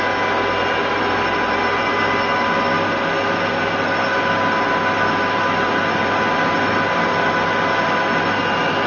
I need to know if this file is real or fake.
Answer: real